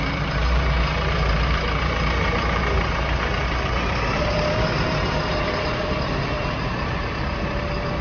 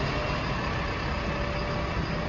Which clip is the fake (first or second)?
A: first